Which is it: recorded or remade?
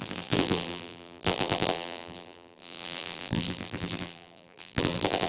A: remade